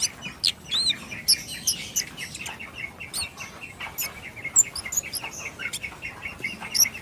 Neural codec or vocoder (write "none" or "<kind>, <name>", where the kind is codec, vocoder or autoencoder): none